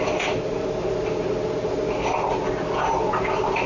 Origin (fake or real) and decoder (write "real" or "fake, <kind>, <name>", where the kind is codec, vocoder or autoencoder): real